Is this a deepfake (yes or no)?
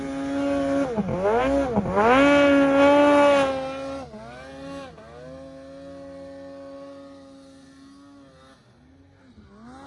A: no